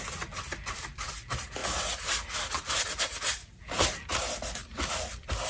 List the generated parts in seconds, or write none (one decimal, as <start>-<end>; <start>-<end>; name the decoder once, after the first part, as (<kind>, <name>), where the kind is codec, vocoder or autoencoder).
1.6-3.0 (vocoder, BigVGAN v2); 3.4-3.9; 4.6-5.5